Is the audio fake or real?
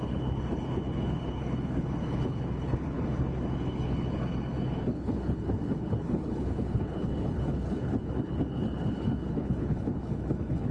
fake